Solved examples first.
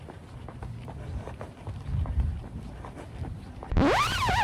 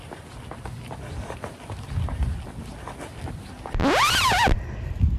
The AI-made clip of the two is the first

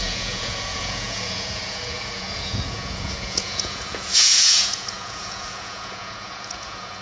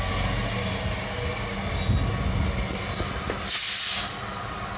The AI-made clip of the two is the first